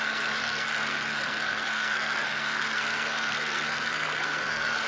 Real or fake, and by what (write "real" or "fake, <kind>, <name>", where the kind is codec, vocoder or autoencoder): fake, codec, SNAC